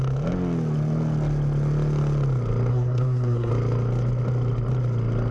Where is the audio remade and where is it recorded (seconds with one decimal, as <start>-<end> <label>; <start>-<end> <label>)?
0.0-2.7 recorded; 2.7-3.5 remade; 3.5-5.3 recorded